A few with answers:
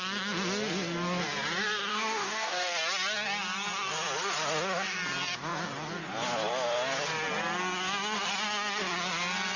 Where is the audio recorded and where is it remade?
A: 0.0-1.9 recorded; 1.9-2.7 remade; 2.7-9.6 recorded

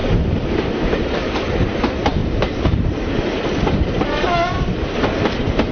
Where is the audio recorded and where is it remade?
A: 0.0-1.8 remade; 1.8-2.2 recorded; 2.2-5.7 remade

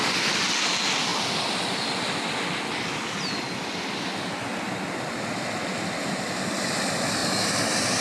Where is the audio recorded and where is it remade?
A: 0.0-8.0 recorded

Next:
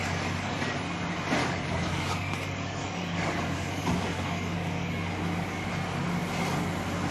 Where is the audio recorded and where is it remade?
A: 0.0-0.8 remade; 0.8-1.4 recorded; 1.4-5.7 remade; 5.7-7.1 recorded

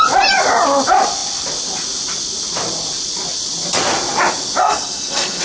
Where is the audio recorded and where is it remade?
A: 0.0-4.6 recorded; 4.6-5.4 remade